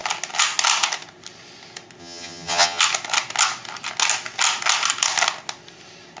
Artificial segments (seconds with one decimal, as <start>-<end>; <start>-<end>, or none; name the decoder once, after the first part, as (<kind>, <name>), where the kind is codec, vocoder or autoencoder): 2.0-2.8 (vocoder, HiFi-GAN)